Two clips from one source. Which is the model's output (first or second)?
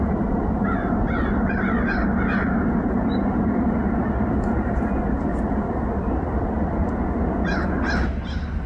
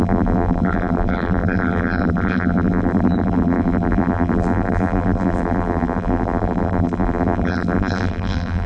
second